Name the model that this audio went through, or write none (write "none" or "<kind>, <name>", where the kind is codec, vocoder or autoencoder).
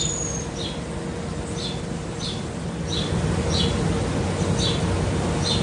none